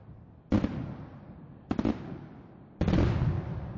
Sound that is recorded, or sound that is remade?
recorded